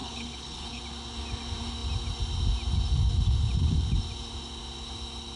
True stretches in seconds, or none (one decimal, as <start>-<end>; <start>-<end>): 0.8-5.4